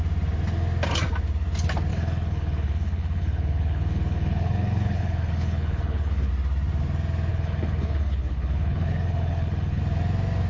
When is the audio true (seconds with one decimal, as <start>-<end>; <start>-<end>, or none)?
0.0-1.9; 6.3-7.3; 9.8-10.5

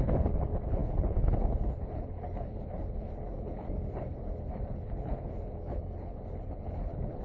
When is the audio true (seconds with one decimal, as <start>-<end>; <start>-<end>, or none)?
none

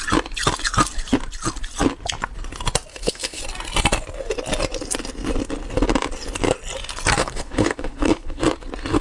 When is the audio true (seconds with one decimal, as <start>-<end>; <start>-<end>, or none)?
0.0-2.9; 3.4-7.2; 8.4-9.0

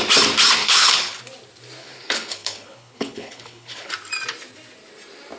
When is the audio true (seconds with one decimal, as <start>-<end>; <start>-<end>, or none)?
0.0-0.6; 1.2-1.8; 3.9-5.4